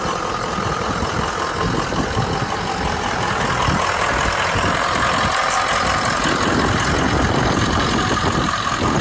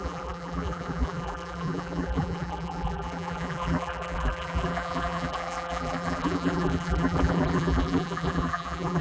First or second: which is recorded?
first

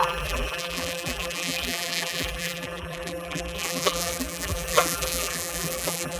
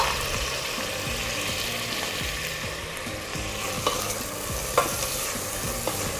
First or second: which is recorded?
second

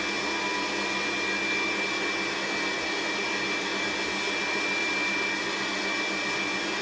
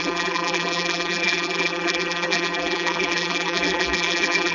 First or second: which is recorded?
first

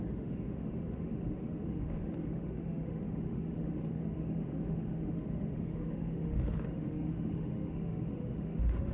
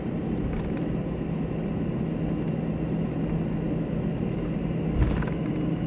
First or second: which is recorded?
second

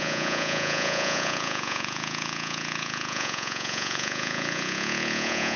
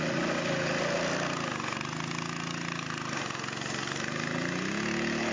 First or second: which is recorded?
second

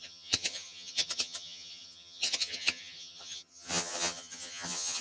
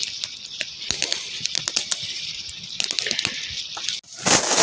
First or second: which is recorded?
second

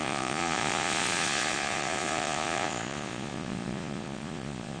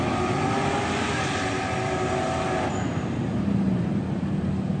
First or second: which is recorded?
second